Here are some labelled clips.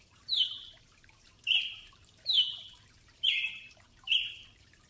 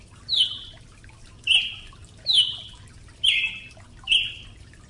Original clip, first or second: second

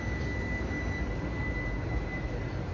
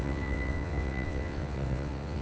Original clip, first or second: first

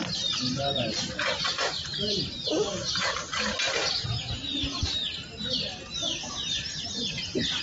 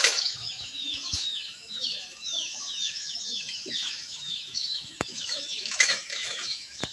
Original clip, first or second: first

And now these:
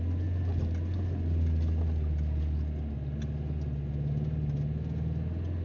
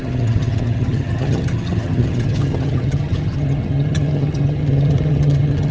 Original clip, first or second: first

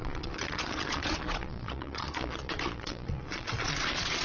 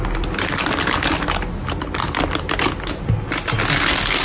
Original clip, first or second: second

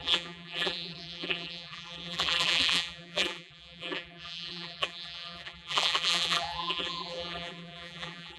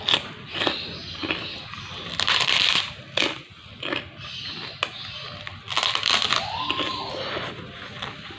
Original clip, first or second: second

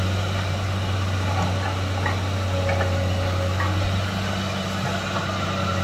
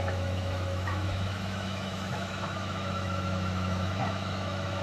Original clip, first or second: first